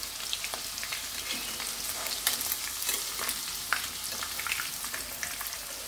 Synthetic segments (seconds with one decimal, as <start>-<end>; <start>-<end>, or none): none